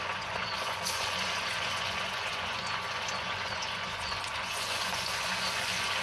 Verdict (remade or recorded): remade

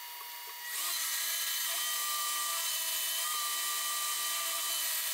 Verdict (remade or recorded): recorded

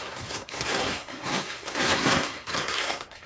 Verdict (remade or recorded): remade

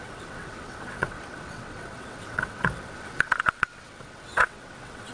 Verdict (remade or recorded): remade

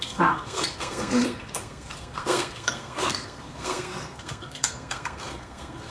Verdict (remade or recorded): remade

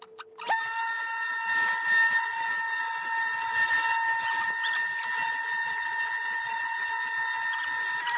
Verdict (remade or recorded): recorded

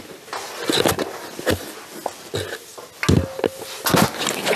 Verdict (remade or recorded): recorded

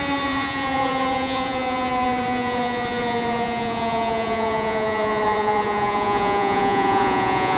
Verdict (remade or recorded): remade